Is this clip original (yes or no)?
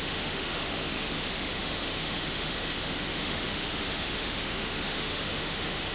no